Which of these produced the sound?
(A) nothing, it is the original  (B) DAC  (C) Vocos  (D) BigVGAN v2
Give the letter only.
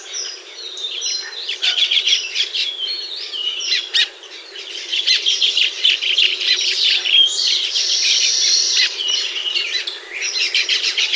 D